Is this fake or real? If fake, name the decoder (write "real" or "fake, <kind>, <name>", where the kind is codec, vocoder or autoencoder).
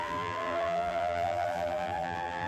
fake, vocoder, BigVGAN v2